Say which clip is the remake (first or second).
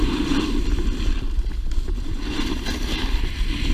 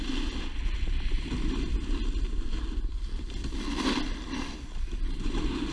first